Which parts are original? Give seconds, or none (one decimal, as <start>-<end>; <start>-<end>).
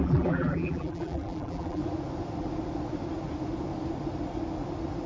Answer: 1.8-5.1